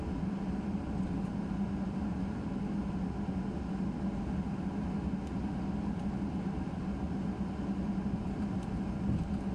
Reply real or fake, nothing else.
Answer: real